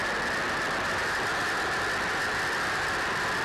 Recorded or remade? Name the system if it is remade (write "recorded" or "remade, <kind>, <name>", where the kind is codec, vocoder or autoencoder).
recorded